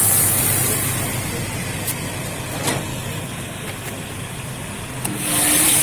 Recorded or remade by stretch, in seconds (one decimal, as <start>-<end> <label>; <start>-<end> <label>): 0.0-5.8 recorded